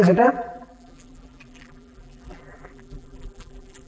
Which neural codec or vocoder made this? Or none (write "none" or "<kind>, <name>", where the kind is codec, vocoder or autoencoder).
vocoder, BigVGAN v2